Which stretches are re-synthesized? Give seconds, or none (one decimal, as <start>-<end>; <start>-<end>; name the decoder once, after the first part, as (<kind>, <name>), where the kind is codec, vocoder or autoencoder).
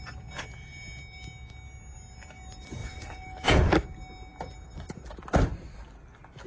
2.8-3.7 (vocoder, Vocos)